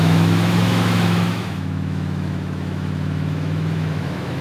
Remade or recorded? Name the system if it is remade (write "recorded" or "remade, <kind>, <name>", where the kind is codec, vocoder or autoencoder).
remade, autoencoder, DAC-VAE